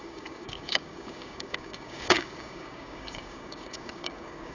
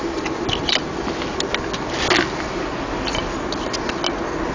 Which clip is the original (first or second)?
second